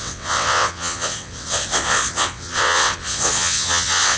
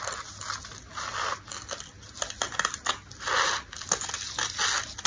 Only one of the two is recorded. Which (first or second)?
second